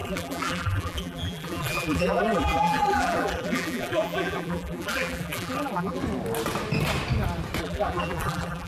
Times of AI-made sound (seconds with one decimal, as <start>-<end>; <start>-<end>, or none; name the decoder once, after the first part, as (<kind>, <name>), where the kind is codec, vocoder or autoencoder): 0.0-6.0 (vocoder, BigVGAN v2); 7.6-8.7